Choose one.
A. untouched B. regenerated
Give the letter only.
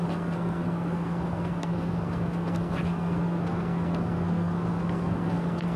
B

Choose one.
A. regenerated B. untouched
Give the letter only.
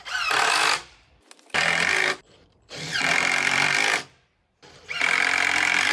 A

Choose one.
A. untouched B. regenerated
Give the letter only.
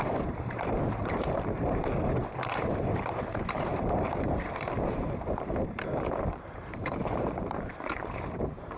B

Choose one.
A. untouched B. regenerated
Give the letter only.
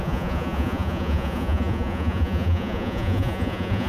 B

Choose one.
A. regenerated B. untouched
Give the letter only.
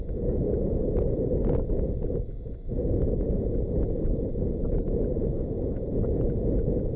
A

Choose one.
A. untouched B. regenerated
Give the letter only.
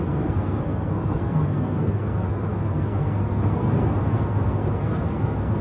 B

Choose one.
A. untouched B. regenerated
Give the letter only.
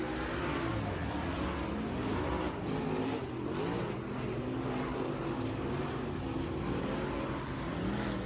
A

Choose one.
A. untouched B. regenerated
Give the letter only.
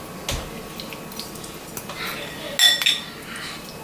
A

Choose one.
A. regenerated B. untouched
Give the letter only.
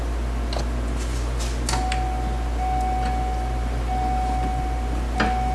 B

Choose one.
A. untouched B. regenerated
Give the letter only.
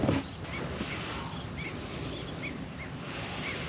A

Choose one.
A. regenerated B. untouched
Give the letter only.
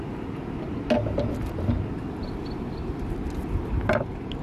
B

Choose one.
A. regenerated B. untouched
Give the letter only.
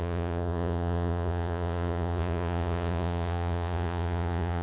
A